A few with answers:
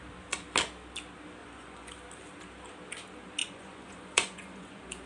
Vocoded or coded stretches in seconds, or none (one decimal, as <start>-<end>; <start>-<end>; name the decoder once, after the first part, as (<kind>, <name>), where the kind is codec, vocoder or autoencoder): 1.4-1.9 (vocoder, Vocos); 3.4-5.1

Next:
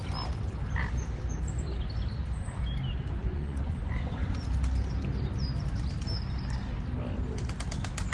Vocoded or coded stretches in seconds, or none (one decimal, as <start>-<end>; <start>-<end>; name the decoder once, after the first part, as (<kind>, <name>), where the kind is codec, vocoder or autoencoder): 3.2-4.4 (vocoder, Vocos)

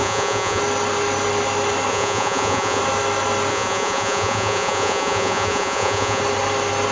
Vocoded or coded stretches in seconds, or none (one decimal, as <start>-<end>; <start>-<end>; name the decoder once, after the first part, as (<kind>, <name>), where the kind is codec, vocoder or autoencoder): 0.0-0.6 (vocoder, Vocos); 1.9-2.8; 3.5-6.2

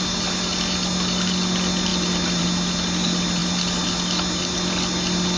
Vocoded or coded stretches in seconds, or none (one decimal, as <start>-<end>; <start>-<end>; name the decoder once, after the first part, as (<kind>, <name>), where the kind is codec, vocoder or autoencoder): none

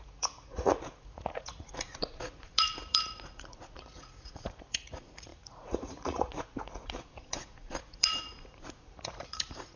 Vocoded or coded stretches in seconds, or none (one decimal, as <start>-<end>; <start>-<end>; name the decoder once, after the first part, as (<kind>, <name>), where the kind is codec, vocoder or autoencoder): 0.0-9.8 (vocoder, Vocos)

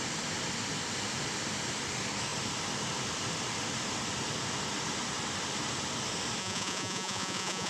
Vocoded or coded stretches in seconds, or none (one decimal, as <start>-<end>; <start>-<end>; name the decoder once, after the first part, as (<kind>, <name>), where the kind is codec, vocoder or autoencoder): 6.4-7.7 (vocoder, Vocos)

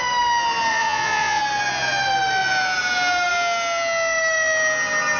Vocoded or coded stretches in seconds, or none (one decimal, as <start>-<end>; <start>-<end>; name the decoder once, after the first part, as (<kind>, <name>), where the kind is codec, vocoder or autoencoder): 0.7-1.4 (vocoder, Vocos)